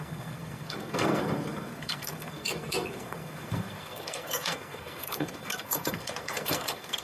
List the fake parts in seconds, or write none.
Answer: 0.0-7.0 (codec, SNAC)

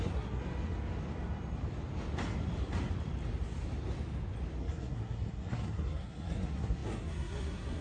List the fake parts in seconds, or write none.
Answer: 0.0-0.4 (codec, SNAC); 4.6-7.8

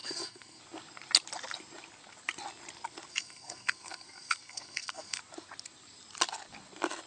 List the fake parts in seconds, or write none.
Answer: 0.0-0.6 (codec, SNAC); 3.1-5.2

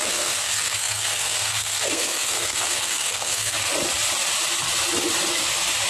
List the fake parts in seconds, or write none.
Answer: 0.0-3.5 (codec, SNAC)

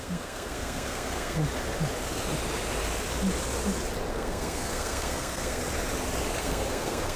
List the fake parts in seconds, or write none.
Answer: 0.0-1.4 (codec, SNAC); 4.1-5.6; 6.4-7.2